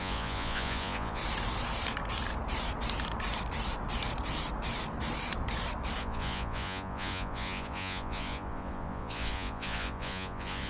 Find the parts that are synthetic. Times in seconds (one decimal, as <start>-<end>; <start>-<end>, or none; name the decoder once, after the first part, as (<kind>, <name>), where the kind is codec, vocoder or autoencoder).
0.0-1.2 (vocoder, Vocos); 6.0-10.7